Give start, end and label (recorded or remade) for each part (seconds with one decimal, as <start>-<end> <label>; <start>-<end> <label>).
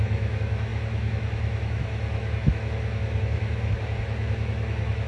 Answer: 0.0-5.1 remade